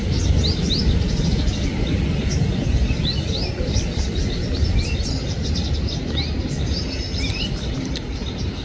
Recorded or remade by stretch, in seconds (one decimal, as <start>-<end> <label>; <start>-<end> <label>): 0.0-8.6 recorded

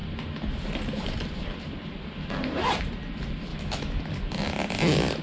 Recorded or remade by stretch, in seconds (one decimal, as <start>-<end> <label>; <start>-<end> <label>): 0.0-3.5 recorded; 3.5-4.0 remade; 4.0-5.2 recorded

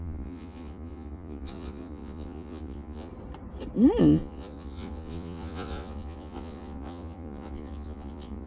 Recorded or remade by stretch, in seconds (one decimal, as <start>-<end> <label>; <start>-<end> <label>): 0.0-3.1 remade; 3.1-4.0 recorded; 4.0-8.5 remade

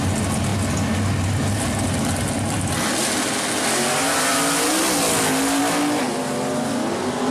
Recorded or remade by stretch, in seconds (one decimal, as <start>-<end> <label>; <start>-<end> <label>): 0.0-7.3 recorded